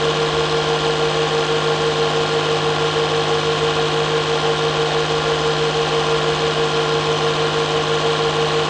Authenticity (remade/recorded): recorded